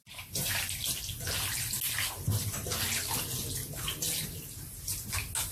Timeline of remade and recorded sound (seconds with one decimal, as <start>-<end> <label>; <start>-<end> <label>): 0.0-0.8 remade; 0.8-5.5 recorded